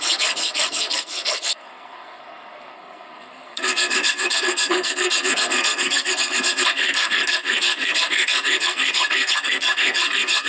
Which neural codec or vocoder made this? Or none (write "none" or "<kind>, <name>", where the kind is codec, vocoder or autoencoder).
codec, SNAC